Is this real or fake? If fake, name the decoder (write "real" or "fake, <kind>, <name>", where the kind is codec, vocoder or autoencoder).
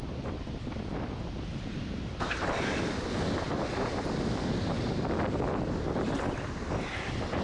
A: real